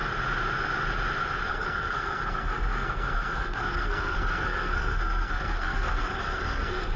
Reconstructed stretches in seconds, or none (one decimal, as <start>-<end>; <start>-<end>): 1.5-7.0